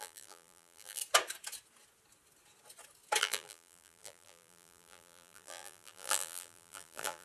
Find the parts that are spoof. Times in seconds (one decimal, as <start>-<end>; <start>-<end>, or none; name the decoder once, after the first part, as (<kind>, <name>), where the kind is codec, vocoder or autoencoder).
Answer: 0.0-1.0 (vocoder, BigVGAN v2); 3.2-7.2